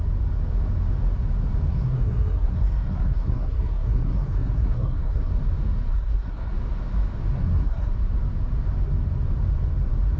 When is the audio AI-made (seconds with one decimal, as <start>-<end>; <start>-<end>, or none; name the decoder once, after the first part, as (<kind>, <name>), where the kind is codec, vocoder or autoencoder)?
1.7-5.3 (codec, SNAC); 5.9-6.5; 7.4-7.9